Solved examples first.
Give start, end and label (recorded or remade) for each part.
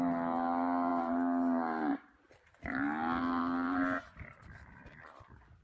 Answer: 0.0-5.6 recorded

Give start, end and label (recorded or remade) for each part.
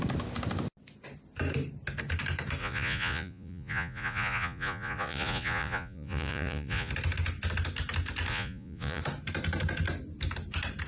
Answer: 0.0-2.6 recorded; 2.6-6.9 remade; 6.9-8.3 recorded; 8.3-9.0 remade; 9.0-10.9 recorded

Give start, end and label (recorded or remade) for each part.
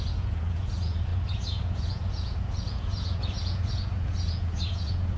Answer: 0.0-5.2 remade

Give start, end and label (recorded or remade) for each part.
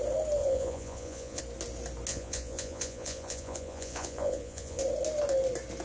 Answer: 0.0-0.4 recorded; 0.4-1.4 remade; 1.4-2.1 recorded; 2.1-4.8 remade; 4.8-5.8 recorded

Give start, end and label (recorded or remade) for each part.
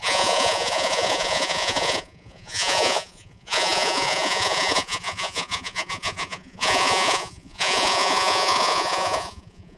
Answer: 0.0-9.8 remade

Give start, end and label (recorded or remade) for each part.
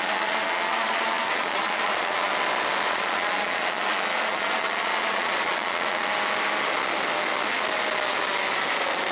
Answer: 0.0-2.3 remade; 2.3-2.9 recorded; 2.9-6.1 remade; 6.1-8.7 recorded; 8.7-9.1 remade